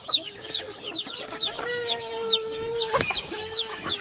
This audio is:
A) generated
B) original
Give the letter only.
A